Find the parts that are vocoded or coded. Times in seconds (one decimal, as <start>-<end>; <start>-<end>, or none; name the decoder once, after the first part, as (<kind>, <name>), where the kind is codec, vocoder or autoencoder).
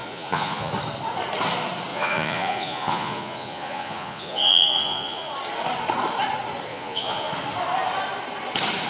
0.0-0.7 (vocoder, Vocos); 1.9-5.3; 6.7-7.3